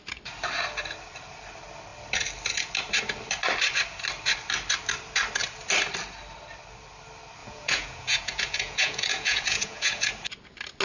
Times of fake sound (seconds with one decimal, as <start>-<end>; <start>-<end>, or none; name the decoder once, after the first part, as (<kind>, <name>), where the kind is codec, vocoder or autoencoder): 7.4-10.1 (vocoder, Vocos)